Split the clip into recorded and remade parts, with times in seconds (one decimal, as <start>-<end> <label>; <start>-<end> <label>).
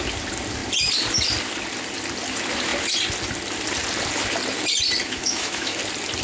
0.0-5.0 recorded; 5.0-5.8 remade; 5.8-6.2 recorded